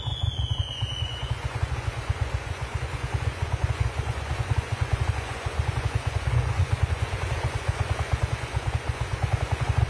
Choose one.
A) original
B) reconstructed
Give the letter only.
B